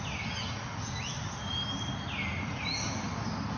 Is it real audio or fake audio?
real